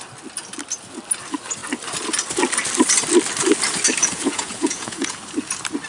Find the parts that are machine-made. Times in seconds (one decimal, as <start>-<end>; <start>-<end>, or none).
4.0-5.2